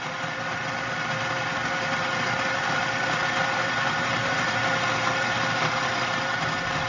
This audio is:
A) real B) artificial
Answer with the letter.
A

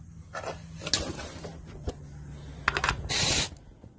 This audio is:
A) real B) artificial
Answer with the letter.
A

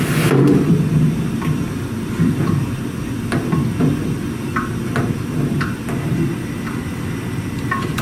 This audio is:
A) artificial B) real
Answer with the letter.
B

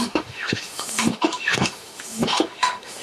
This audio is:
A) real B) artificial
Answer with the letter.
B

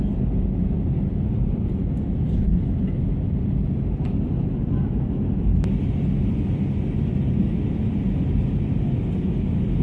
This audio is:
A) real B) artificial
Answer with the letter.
A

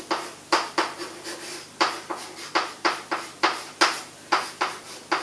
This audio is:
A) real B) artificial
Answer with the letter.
A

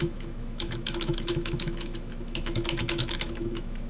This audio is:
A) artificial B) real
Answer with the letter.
A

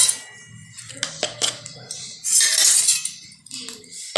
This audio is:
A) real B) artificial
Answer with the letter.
A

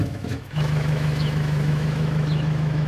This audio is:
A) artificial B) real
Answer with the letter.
A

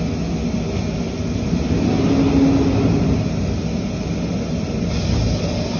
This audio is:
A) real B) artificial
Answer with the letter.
A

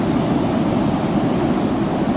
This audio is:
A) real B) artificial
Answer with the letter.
A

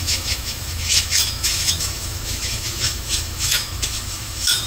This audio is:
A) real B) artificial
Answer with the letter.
B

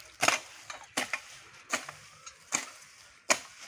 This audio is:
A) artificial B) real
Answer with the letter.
B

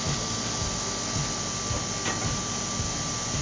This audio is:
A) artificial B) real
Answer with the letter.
B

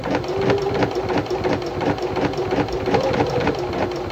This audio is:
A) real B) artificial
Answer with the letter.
A